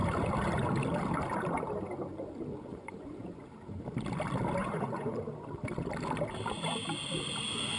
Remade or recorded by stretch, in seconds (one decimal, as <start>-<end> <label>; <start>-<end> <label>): 0.0-2.7 recorded; 2.7-3.4 remade; 3.4-4.6 recorded; 4.6-5.2 remade; 5.2-7.8 recorded